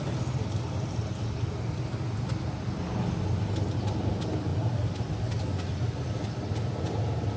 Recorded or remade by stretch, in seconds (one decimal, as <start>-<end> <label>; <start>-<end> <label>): 0.0-7.4 recorded